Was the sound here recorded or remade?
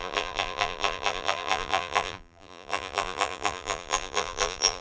remade